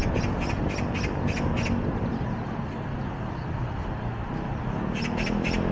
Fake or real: real